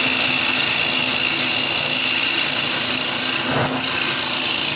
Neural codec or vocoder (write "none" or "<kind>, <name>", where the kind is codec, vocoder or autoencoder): none